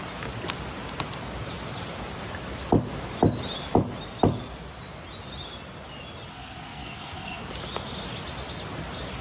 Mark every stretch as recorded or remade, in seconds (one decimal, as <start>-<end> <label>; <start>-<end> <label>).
0.0-6.3 recorded; 6.3-7.4 remade; 7.4-9.2 recorded